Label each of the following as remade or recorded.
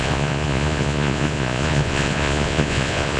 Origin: remade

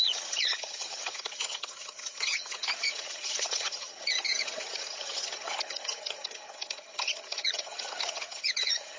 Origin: remade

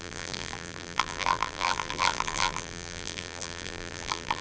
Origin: remade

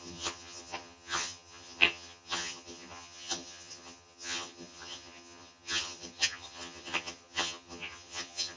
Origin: remade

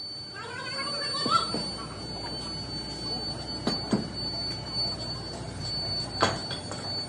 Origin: recorded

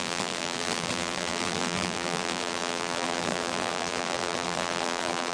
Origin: remade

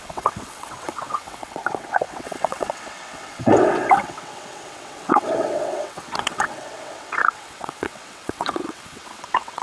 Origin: remade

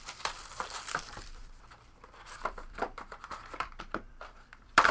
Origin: remade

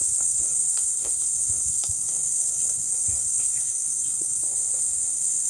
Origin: remade